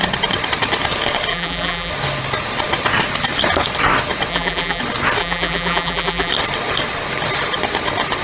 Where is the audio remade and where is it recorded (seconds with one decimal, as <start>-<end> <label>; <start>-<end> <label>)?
0.0-1.3 recorded; 1.3-1.9 remade; 1.9-4.3 recorded; 4.3-4.8 remade; 4.8-5.2 recorded; 5.2-6.3 remade; 6.3-8.2 recorded